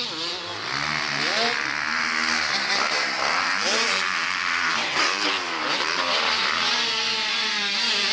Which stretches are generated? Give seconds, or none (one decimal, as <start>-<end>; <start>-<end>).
4.8-5.3